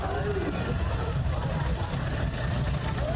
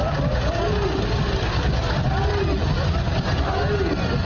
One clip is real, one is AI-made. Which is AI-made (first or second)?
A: first